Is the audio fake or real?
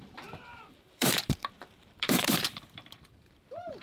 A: fake